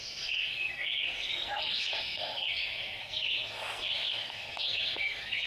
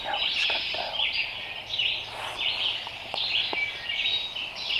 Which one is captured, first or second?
second